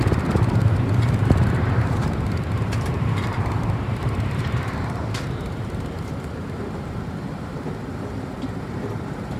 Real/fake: fake